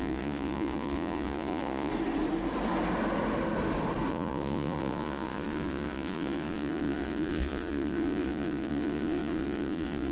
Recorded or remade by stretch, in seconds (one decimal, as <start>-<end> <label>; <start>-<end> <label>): 0.0-1.9 remade; 1.9-4.1 recorded; 4.1-10.1 remade